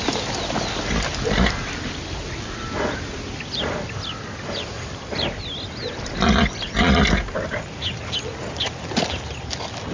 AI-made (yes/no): no